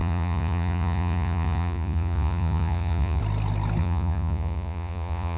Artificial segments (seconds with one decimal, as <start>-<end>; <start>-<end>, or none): 0.0-3.2; 3.8-5.4